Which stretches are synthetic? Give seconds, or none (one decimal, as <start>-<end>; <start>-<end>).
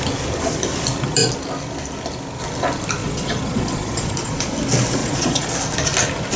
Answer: 3.0-4.5; 5.0-5.5